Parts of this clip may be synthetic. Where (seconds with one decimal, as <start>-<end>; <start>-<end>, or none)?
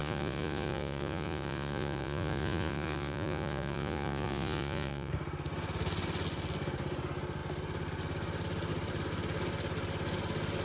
0.0-5.1